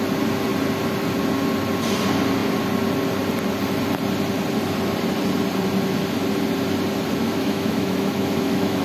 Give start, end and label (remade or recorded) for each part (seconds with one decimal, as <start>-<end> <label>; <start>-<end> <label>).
0.0-7.2 recorded; 7.2-8.8 remade